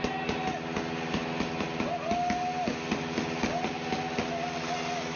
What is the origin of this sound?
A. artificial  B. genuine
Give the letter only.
B